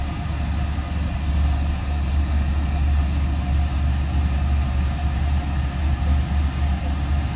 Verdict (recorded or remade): recorded